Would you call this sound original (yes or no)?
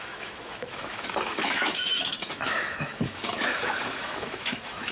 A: no